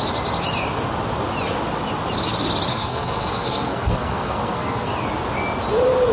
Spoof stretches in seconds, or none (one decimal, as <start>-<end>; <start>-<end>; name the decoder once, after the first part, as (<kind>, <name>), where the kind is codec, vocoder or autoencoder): 2.7-4.9 (codec, SNAC)